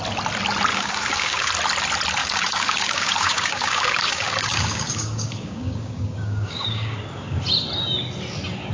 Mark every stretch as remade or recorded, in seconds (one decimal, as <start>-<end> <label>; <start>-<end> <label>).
0.0-0.7 recorded; 0.7-1.5 remade; 1.5-2.2 recorded; 2.2-7.4 remade; 7.4-8.7 recorded